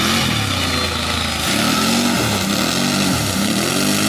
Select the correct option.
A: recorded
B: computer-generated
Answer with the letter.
A